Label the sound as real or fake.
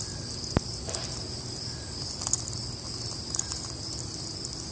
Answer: real